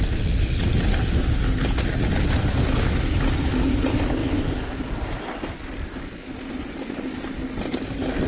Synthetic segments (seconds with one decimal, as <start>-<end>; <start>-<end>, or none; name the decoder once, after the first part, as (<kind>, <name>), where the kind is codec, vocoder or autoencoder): none